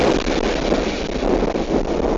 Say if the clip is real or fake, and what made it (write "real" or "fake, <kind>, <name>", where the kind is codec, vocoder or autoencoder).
real